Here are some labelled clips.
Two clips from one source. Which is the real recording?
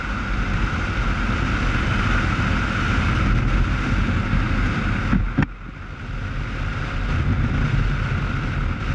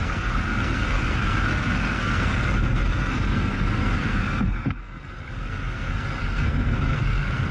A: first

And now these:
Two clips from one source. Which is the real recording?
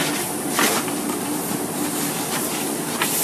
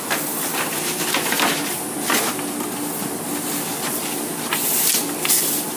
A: second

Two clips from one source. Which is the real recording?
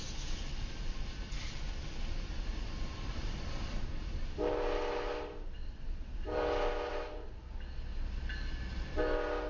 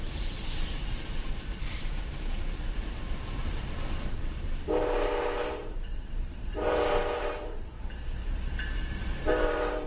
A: first